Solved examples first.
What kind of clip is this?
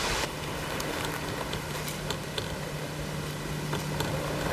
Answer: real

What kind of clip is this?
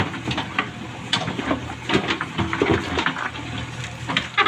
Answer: real